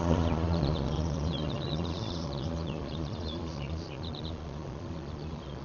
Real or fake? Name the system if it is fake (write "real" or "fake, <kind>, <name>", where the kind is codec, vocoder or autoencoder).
fake, vocoder, Vocos